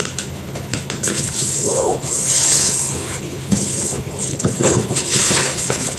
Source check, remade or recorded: remade